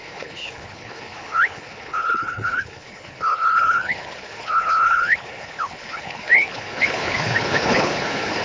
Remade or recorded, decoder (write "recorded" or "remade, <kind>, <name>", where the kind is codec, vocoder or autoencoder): remade, codec, HILCodec